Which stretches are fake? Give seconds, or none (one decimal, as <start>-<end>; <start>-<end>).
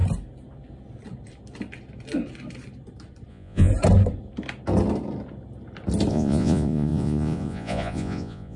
3.3-3.7; 6.1-8.6